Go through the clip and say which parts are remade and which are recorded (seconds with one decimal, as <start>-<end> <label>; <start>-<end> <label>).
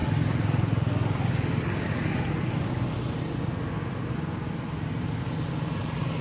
0.0-6.2 recorded